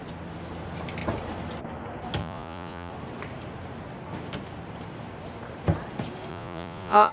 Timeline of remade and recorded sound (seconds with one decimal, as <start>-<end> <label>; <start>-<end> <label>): 0.0-2.2 recorded; 2.2-2.9 remade; 2.9-6.3 recorded; 6.3-7.1 remade